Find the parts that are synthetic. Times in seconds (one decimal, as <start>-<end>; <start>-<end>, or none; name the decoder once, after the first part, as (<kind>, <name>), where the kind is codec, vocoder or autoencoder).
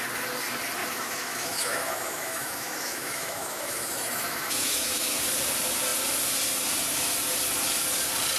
0.8-5.2 (autoencoder, DAC-VAE)